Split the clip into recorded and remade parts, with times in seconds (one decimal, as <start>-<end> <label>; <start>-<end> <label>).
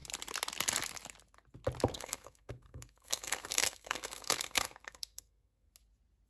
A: 0.0-1.9 recorded; 1.9-5.7 remade; 5.7-6.3 recorded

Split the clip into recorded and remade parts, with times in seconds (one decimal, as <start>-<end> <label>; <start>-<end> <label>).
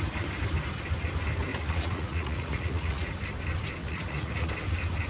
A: 0.0-1.5 recorded; 1.5-3.1 remade; 3.1-3.8 recorded; 3.8-4.5 remade; 4.5-5.1 recorded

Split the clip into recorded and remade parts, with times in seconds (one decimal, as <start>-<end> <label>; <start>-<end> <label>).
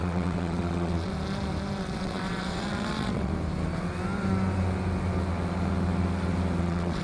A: 0.0-1.1 remade; 1.1-1.8 recorded; 1.8-3.3 remade; 3.3-6.6 recorded; 6.6-7.0 remade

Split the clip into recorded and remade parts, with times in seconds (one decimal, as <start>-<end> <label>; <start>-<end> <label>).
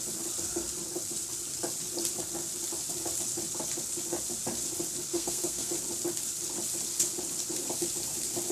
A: 0.0-5.1 recorded; 5.1-5.7 remade; 5.7-8.5 recorded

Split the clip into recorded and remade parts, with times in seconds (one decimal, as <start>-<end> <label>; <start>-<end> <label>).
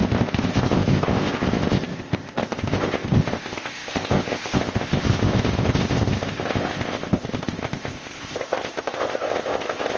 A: 0.0-10.0 remade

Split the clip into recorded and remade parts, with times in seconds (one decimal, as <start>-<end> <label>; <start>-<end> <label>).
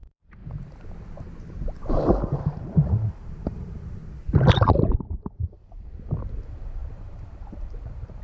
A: 0.0-0.4 remade; 0.4-1.9 recorded; 1.9-4.0 remade; 4.0-5.0 recorded; 5.0-8.2 remade